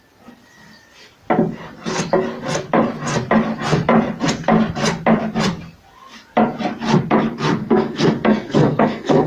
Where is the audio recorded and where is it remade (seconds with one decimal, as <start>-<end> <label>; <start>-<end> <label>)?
0.0-7.6 recorded; 7.6-9.3 remade